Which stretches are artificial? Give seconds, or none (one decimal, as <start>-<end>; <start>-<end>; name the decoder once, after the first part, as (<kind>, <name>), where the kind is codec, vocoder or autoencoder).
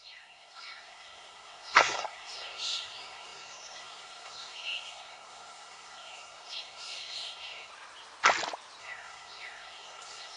0.0-7.7 (codec, SNAC); 8.8-10.4